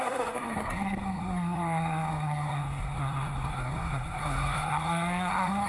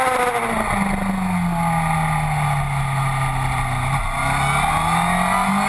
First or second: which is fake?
first